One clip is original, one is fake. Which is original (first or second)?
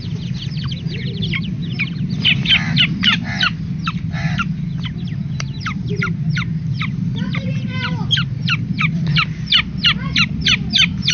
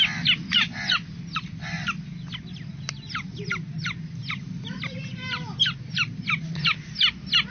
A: second